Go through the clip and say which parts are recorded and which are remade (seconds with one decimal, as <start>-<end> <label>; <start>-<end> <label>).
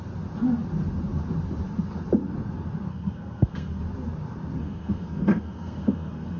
0.0-2.9 recorded; 2.9-3.8 remade; 3.8-4.6 recorded; 4.6-6.4 remade